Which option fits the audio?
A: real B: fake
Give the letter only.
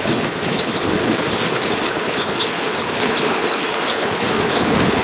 B